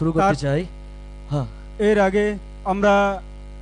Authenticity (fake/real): real